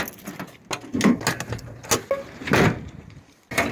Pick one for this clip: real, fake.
real